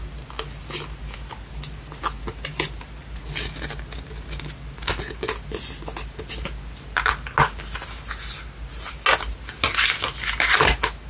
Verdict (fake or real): real